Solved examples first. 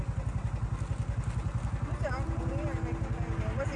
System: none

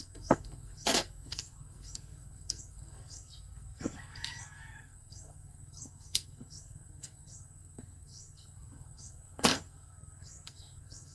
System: codec, SNAC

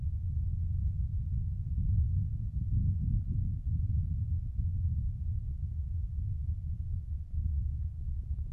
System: none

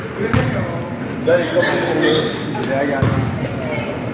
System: none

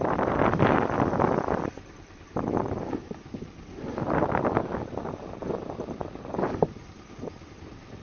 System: none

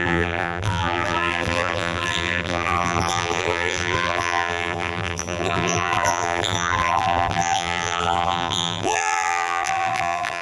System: vocoder, BigVGAN v2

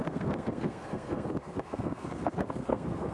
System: codec, SNAC